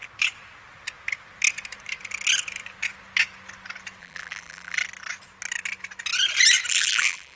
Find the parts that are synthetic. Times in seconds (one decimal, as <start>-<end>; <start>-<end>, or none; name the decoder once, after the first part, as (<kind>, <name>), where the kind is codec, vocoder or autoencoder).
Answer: 4.0-4.8 (vocoder, BigVGAN v2); 6.7-7.4